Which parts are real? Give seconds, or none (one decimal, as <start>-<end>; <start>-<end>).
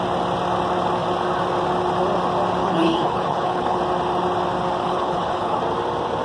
0.0-2.6; 3.8-4.8; 5.6-6.2